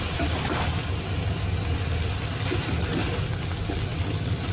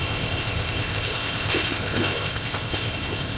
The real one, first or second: first